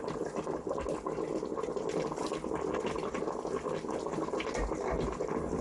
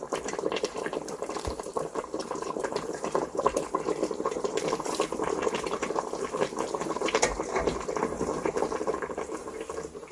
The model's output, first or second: second